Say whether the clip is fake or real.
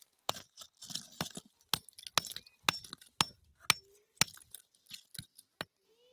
real